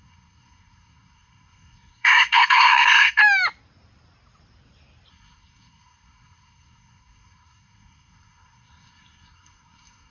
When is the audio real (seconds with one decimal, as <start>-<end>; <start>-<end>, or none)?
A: 3.2-5.1